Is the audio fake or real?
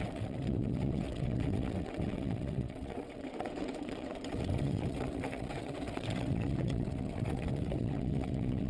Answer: fake